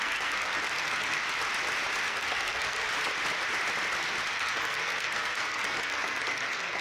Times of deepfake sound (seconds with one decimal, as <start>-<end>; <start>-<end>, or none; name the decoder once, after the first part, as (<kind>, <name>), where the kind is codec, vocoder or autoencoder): 0.0-1.2 (codec, SNAC); 2.0-2.9; 4.3-6.8